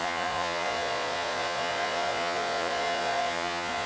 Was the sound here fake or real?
fake